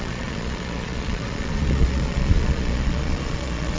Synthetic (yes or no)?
yes